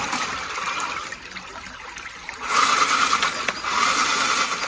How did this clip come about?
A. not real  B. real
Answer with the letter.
B